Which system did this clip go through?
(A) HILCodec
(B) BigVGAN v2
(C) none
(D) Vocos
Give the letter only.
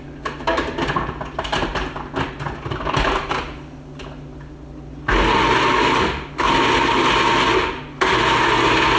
C